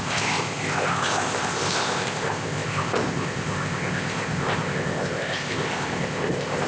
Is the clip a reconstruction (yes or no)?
yes